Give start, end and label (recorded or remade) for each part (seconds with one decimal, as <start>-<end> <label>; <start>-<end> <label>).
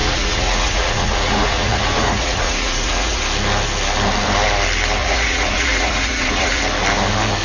0.0-3.2 remade; 3.2-5.0 recorded; 5.0-6.6 remade; 6.6-7.4 recorded